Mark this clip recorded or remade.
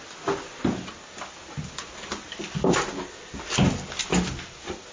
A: recorded